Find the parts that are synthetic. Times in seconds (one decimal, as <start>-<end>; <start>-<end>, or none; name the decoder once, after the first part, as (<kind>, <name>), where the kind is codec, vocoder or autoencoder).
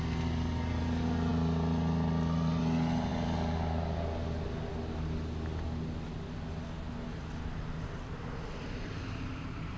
none